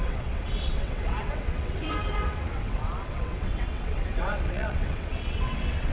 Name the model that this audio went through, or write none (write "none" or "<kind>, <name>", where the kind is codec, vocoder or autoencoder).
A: vocoder, WaveNeXt